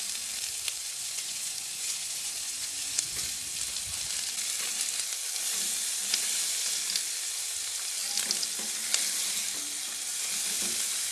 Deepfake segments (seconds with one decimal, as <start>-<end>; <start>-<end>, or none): 0.8-3.4